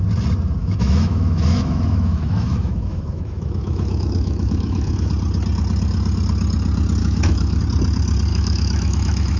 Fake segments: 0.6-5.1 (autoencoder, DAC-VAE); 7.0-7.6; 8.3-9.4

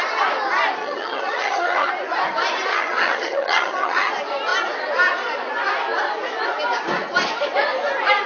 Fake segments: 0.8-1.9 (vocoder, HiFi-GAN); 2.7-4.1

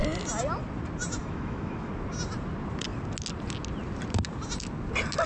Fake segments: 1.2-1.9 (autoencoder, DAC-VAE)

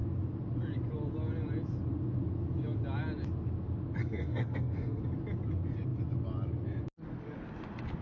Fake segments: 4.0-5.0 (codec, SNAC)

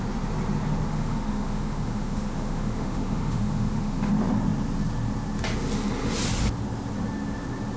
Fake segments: 0.9-4.1 (autoencoder, DAC-VAE)